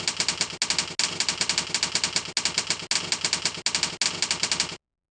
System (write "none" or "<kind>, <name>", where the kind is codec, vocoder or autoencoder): none